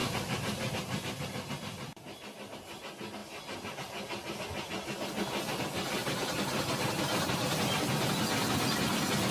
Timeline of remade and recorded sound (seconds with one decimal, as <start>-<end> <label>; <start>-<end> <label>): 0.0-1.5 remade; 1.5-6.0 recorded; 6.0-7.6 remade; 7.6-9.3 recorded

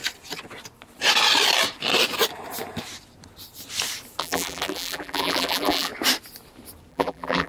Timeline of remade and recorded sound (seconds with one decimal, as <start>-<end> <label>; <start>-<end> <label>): 0.0-4.2 recorded; 4.2-5.9 remade; 5.9-6.9 recorded; 6.9-7.5 remade

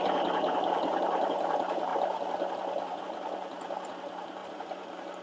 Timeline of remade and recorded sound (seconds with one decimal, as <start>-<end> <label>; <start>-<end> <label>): 0.0-1.9 remade; 1.9-3.0 recorded; 3.0-5.2 remade